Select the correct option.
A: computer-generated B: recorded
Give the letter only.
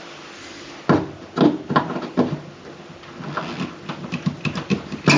B